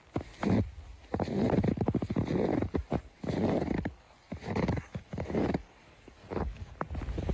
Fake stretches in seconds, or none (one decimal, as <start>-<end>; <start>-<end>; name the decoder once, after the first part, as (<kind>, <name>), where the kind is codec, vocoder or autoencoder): 2.5-6.7 (codec, DAC)